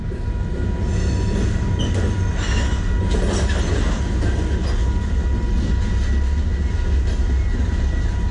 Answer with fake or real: real